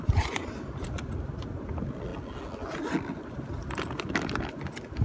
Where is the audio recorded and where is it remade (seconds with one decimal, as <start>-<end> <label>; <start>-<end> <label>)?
0.0-5.0 recorded